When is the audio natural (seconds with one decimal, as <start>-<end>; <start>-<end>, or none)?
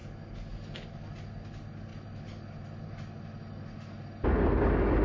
0.0-5.0